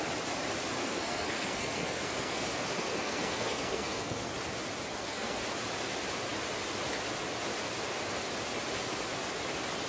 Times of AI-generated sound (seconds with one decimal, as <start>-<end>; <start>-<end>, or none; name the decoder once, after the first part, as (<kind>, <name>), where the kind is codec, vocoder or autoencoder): 0.8-4.3 (codec, SNAC); 4.9-5.4